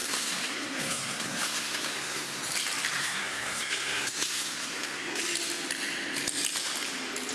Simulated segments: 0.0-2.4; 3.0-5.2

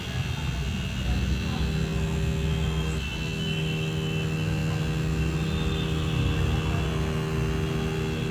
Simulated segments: none

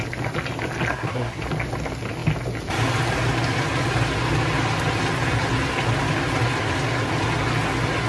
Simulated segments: 0.9-1.4

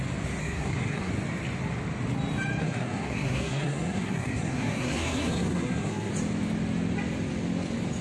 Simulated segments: 0.4-1.1; 2.6-6.1

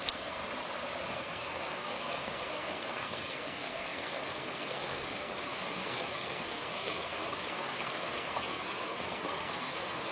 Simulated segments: 0.0-0.4; 1.1-10.1

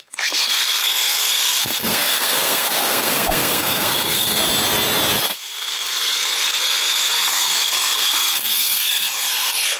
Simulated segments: 0.0-4.4; 5.3-9.8

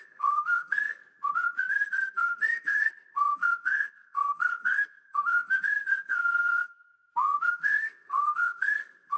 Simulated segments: 0.0-1.0; 1.7-6.9; 7.5-9.2

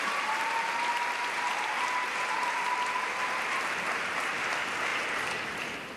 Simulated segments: none